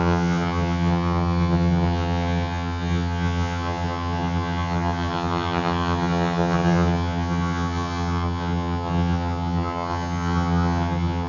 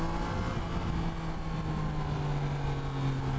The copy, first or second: first